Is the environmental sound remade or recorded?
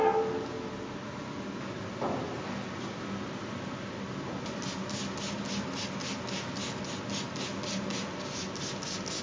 recorded